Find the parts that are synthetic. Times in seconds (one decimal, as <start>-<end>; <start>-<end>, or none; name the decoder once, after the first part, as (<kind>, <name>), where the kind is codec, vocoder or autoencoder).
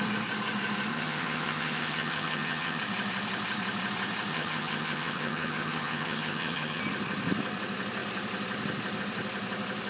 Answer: 0.9-2.8 (vocoder, HiFi-GAN); 4.3-6.8